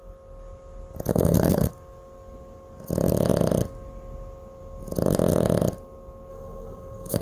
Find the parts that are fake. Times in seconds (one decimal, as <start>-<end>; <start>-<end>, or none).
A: 1.1-1.7; 6.3-7.2

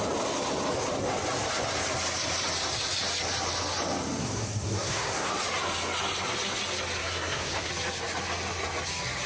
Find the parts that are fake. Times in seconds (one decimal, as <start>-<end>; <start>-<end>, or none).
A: 4.2-5.3; 7.0-7.7

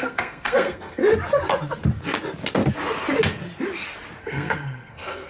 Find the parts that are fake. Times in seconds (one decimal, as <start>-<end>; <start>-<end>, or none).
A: 0.0-1.0; 4.2-5.3

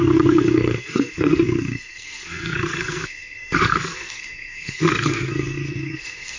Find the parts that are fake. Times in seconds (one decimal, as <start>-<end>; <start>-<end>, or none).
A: 0.0-6.4